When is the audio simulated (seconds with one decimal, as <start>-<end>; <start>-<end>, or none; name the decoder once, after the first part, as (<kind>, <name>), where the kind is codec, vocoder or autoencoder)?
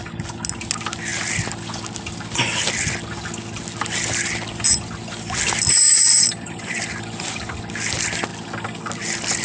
4.7-7.5 (vocoder, BigVGAN v2)